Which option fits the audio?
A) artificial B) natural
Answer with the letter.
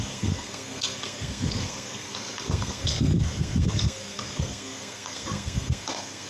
A